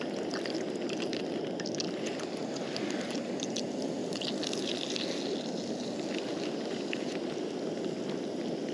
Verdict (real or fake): real